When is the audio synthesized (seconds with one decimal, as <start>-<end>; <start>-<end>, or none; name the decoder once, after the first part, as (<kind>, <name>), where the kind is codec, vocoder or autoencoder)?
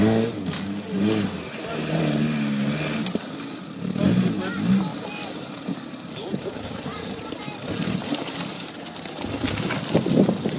4.9-7.4 (vocoder, BigVGAN v2)